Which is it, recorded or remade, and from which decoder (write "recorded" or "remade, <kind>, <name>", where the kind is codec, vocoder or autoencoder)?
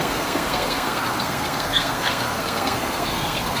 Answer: remade, codec, SNAC